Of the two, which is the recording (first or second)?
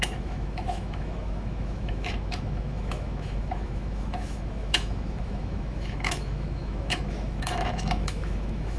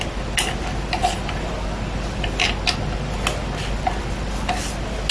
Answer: second